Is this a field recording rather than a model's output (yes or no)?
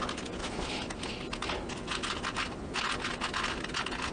yes